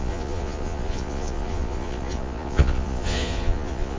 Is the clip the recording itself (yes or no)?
no